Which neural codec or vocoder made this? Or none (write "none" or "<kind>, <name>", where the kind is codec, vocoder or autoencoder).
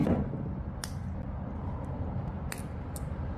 none